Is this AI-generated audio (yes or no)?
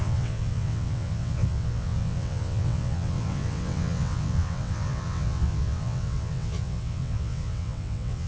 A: yes